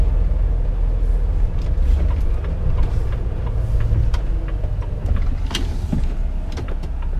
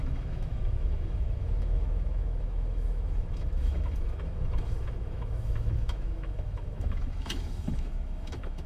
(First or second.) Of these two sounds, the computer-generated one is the second